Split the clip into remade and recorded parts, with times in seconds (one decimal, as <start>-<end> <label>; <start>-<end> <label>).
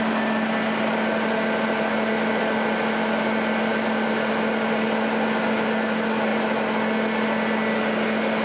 0.0-8.4 recorded